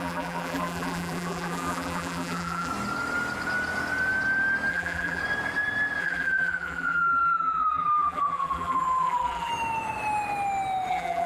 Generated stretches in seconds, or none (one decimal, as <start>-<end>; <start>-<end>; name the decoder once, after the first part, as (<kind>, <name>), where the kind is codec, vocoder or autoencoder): 0.0-2.7 (vocoder, BigVGAN v2); 4.7-5.2; 6.0-9.5; 10.9-11.3